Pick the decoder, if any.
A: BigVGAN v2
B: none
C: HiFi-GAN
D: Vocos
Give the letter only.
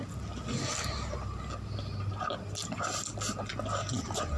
B